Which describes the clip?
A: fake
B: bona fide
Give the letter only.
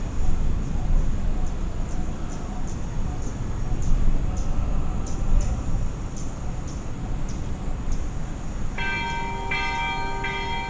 B